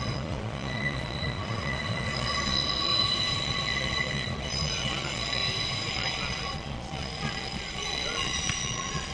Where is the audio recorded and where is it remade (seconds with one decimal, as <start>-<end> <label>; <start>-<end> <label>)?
0.0-2.9 remade; 2.9-3.4 recorded; 3.4-5.4 remade; 5.4-5.9 recorded; 5.9-9.1 remade